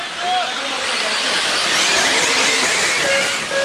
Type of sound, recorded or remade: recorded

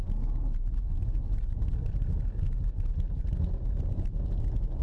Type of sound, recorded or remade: recorded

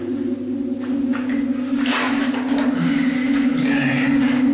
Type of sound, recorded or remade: recorded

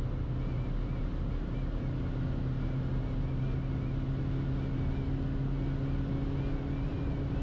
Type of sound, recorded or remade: recorded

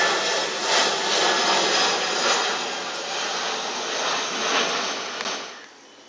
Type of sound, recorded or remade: recorded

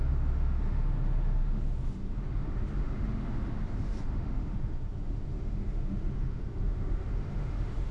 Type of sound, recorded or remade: remade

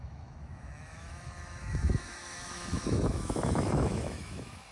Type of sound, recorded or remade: remade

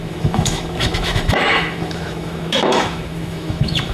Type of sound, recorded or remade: remade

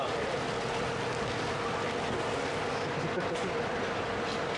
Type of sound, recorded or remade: recorded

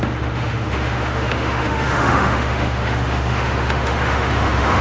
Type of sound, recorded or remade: remade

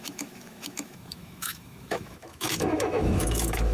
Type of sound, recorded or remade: remade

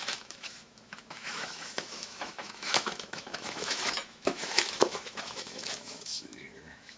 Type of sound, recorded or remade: remade